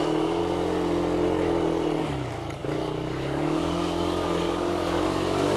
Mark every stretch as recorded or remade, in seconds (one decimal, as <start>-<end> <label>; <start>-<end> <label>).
0.0-0.4 remade; 0.4-2.0 recorded; 2.0-5.6 remade

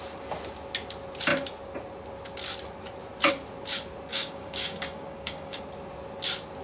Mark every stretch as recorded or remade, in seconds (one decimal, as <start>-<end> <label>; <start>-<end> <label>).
0.0-4.1 recorded; 4.1-5.6 remade; 5.6-6.6 recorded

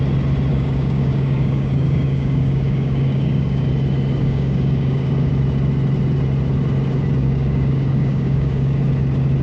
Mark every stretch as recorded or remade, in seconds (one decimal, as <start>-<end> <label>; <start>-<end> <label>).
0.0-0.5 recorded; 0.5-3.7 remade; 3.7-4.2 recorded; 4.2-5.3 remade; 5.3-7.2 recorded; 7.2-8.8 remade; 8.8-9.4 recorded

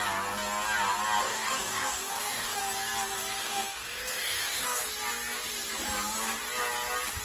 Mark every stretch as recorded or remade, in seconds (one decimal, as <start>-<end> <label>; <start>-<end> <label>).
0.0-1.2 recorded; 1.2-2.6 remade; 2.6-3.4 recorded; 3.4-4.8 remade; 4.8-7.2 recorded

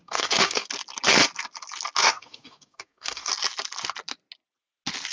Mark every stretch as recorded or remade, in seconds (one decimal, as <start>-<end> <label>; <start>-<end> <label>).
0.0-0.7 remade; 0.7-2.0 recorded; 2.0-3.3 remade; 3.3-5.1 recorded

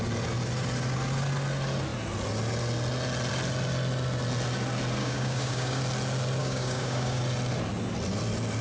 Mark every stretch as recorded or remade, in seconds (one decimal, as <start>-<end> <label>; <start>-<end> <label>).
0.0-5.0 recorded; 5.0-5.8 remade; 5.8-6.4 recorded; 6.4-7.2 remade; 7.2-8.6 recorded